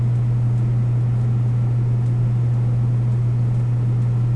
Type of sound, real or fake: real